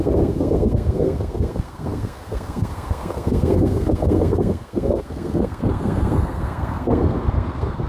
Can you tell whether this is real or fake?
fake